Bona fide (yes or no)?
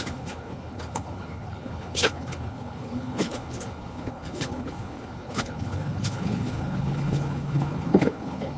no